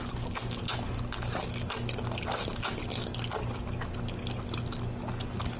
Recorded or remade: recorded